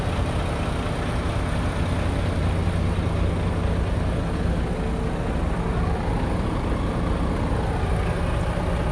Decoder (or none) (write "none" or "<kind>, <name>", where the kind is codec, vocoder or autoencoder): none